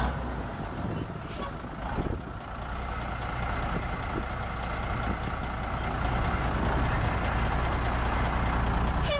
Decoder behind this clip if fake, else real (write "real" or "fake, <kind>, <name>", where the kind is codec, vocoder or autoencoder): real